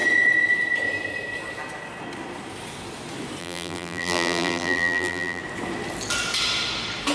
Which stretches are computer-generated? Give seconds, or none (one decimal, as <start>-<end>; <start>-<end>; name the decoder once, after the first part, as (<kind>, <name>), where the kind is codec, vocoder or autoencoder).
3.4-5.4 (vocoder, BigVGAN v2)